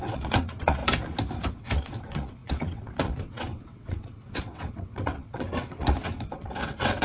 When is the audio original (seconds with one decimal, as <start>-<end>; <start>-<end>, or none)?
0.8-1.5